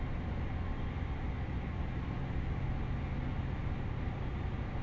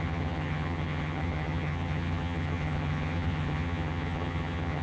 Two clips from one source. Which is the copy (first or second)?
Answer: second